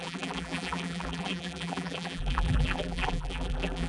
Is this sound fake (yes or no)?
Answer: yes